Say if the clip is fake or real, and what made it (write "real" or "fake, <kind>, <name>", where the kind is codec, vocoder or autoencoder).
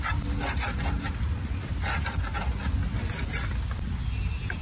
real